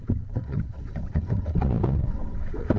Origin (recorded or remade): remade